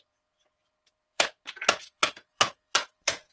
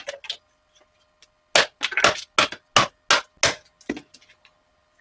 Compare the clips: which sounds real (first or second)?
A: second